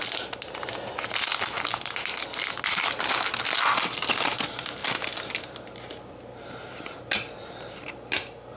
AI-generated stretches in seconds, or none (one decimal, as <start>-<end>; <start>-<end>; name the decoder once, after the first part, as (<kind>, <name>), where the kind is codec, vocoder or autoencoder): none